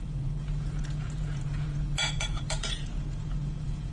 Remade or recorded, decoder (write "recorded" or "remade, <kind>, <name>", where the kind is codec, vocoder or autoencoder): remade, vocoder, Vocos